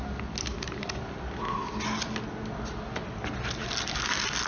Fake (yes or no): no